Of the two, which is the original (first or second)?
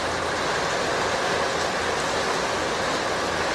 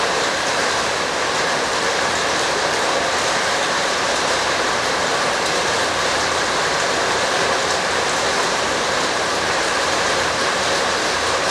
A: first